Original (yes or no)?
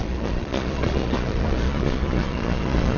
no